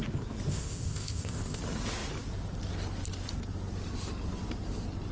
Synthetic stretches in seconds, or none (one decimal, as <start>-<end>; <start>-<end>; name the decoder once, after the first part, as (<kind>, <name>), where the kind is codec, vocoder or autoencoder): 0.5-1.6 (codec, ZipCodec)